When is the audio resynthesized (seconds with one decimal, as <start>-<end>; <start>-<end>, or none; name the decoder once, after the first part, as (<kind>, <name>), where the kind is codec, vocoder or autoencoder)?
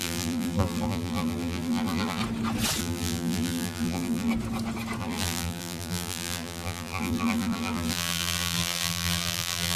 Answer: 0.0-2.2 (vocoder, BigVGAN v2); 2.8-4.3; 5.0-9.8